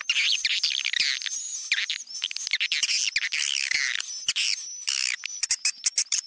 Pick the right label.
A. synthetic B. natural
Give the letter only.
B